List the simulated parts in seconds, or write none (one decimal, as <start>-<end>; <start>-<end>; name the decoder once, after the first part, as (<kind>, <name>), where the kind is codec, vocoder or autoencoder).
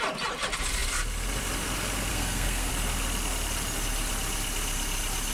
2.1-2.7 (codec, SNAC)